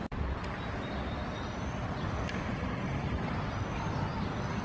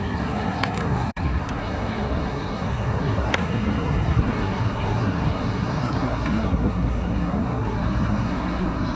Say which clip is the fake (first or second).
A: second